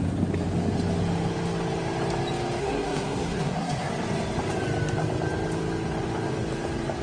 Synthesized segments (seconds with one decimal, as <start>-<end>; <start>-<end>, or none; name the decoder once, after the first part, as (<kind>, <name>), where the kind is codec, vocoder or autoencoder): 2.6-3.9 (codec, SNAC)